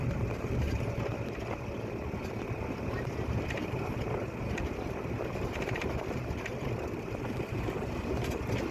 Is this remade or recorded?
recorded